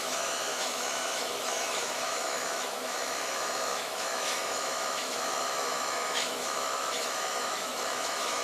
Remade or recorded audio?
remade